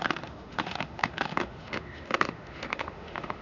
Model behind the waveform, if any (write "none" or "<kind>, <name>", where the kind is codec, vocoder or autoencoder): autoencoder, DAC-VAE